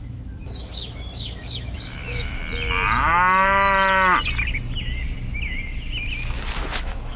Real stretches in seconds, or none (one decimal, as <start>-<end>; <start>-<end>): 2.4-6.6